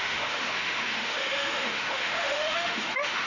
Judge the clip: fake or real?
fake